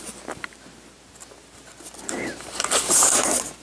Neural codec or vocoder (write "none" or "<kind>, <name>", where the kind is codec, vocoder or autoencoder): none